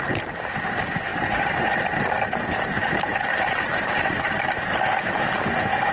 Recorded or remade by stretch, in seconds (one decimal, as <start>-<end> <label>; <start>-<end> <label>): 0.0-1.1 recorded; 1.1-4.4 remade; 4.4-5.9 recorded

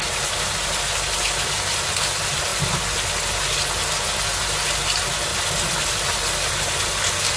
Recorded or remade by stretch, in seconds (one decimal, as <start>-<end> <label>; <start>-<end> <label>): 0.0-7.4 recorded

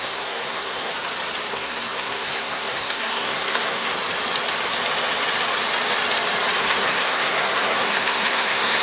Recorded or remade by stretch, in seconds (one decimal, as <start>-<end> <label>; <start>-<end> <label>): 0.0-0.9 remade; 0.9-1.5 recorded; 1.5-3.9 remade; 3.9-6.6 recorded; 6.6-8.8 remade